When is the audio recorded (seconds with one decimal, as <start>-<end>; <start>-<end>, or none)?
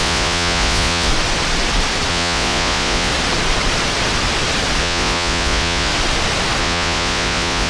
1.1-2.1; 3.1-4.8; 5.9-6.6